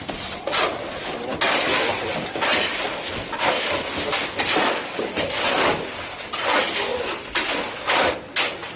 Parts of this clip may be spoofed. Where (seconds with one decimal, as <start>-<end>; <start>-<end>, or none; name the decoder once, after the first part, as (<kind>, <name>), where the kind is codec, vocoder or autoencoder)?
none